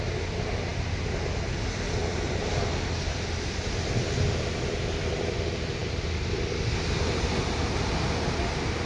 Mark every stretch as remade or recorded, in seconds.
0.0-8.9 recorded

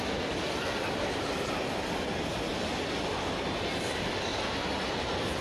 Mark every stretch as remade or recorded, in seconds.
0.0-5.4 recorded

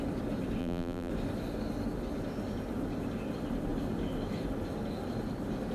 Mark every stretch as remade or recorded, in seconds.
0.0-0.6 recorded; 0.6-1.1 remade; 1.1-5.7 recorded

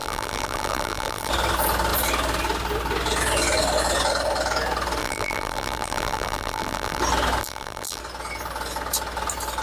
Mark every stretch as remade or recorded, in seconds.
0.0-1.3 remade; 1.3-5.0 recorded; 5.0-7.0 remade; 7.0-7.4 recorded; 7.4-8.0 remade; 8.0-9.6 recorded

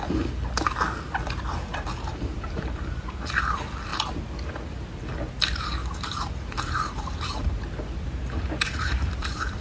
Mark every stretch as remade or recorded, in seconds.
0.0-2.1 recorded; 2.1-2.8 remade; 2.8-5.8 recorded; 5.8-9.6 remade

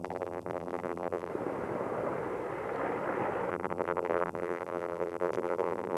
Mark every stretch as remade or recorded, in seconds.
0.0-1.3 remade; 1.3-3.5 recorded; 3.5-6.0 remade

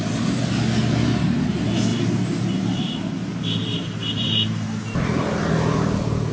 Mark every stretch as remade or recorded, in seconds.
0.0-1.9 recorded; 1.9-5.5 remade; 5.5-6.3 recorded

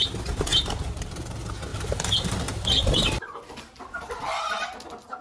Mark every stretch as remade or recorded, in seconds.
0.0-0.5 recorded; 0.5-1.1 remade; 1.1-1.7 recorded; 1.7-3.3 remade; 3.3-5.2 recorded